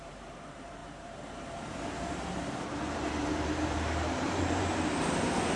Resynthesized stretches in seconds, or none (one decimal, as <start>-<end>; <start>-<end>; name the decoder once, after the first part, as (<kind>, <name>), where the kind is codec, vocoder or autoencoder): 0.0-5.6 (vocoder, BigVGAN v2)